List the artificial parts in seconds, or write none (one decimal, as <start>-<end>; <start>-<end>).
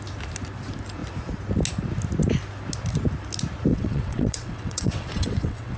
3.7-5.8